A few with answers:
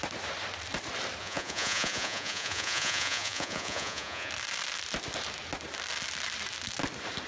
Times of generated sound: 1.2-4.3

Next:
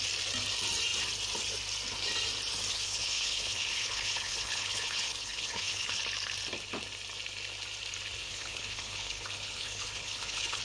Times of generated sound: 2.7-6.0; 8.2-10.6